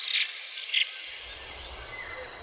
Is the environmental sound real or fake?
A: real